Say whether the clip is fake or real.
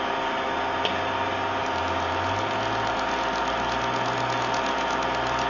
real